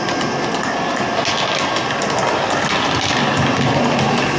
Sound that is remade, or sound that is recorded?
recorded